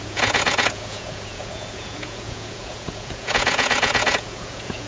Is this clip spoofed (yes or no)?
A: yes